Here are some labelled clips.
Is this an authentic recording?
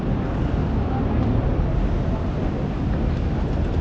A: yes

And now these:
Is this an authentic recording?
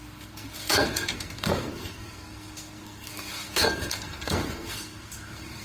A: no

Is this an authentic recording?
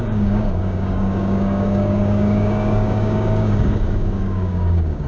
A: no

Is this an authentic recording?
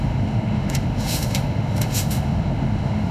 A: no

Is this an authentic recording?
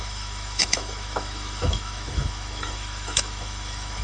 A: no